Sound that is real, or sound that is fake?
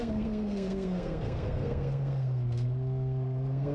fake